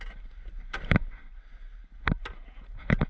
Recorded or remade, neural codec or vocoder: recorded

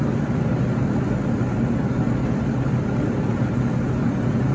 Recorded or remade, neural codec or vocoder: recorded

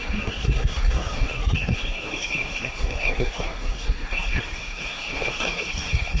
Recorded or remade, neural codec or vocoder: remade, codec, SNAC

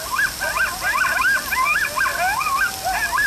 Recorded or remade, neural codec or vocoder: recorded